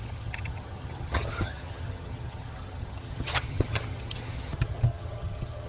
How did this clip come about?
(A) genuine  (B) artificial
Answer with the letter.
B